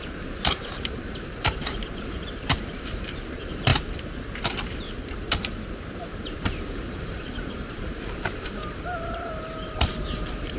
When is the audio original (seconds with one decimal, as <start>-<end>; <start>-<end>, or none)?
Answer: 3.7-6.6